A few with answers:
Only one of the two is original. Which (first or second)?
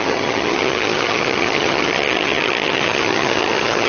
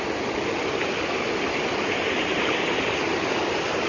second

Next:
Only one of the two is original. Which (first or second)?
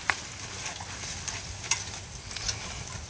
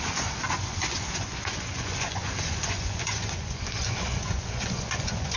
first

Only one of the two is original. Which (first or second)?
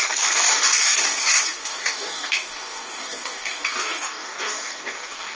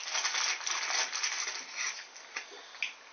second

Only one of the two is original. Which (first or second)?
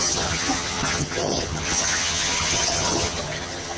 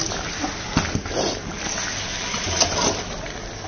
second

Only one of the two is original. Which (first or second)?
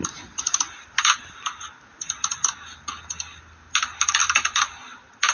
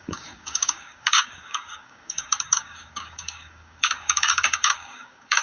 first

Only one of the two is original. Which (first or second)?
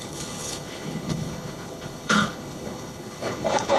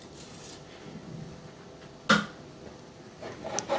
second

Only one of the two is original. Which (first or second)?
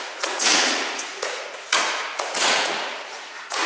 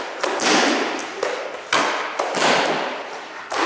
second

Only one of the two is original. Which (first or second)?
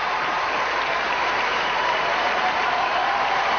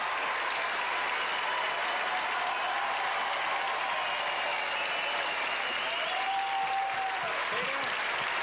second